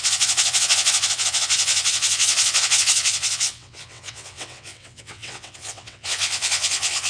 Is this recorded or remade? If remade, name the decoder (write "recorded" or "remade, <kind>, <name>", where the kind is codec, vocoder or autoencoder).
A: remade, vocoder, WaveNeXt